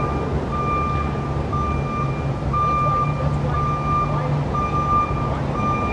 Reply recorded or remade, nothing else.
recorded